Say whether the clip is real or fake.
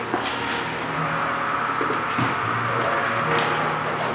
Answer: real